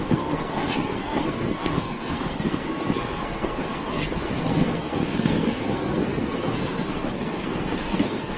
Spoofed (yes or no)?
yes